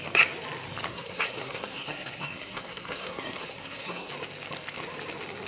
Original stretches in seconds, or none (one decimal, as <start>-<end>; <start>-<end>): 0.0-0.9; 4.1-5.5